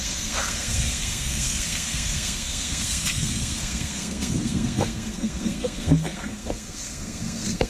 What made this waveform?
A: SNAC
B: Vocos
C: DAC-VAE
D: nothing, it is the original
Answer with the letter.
A